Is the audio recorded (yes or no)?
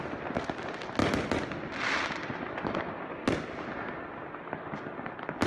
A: yes